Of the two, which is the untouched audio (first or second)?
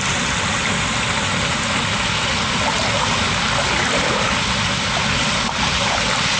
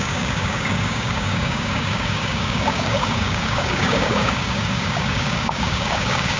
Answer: first